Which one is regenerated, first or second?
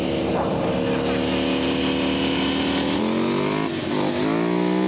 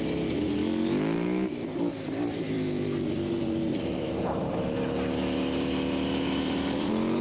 second